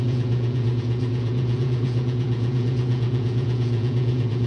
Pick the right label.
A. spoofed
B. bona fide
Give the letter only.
A